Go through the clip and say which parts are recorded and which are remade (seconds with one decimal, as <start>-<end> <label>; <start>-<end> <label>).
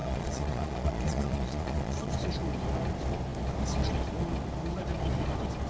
0.0-2.1 remade; 2.1-5.7 recorded